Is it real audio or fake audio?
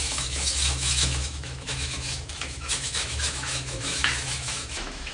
fake